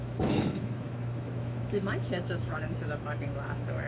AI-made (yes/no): yes